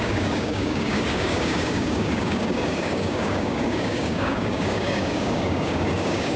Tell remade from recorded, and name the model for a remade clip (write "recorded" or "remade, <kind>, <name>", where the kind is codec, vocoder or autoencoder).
remade, codec, DAC